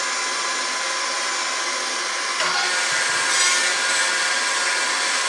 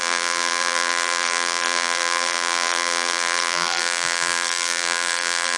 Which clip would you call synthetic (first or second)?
second